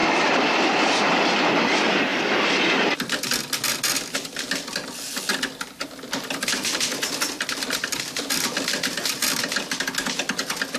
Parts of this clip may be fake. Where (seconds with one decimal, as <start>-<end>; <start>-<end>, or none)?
0.0-1.1; 2.1-3.8; 5.3-7.7

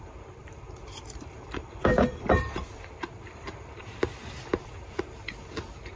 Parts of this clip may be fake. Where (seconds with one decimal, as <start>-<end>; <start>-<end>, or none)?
0.4-4.0; 4.5-5.0

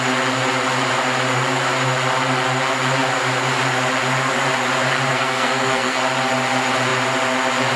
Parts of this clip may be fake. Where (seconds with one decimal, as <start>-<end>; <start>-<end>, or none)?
5.1-6.0